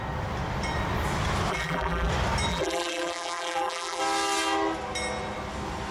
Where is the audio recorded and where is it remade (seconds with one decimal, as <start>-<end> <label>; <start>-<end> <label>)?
0.0-1.5 recorded; 1.5-2.1 remade; 2.1-2.5 recorded; 2.5-4.0 remade; 4.0-5.9 recorded